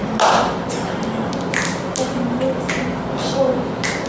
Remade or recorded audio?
recorded